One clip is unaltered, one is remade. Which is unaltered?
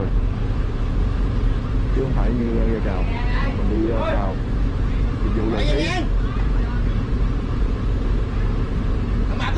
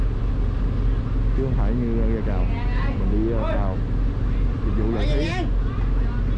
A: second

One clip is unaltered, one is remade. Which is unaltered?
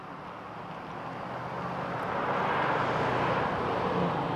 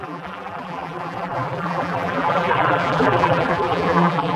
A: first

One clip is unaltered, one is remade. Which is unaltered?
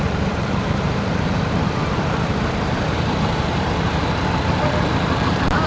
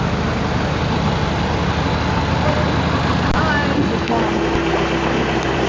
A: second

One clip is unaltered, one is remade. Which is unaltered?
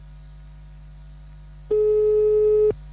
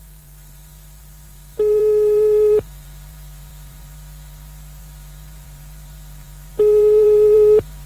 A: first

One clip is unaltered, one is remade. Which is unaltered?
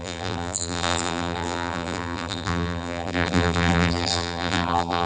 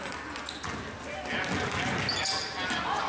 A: second